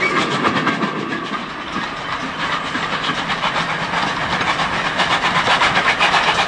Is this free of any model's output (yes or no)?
yes